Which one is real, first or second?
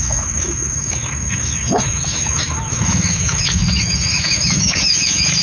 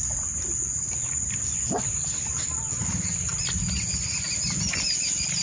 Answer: second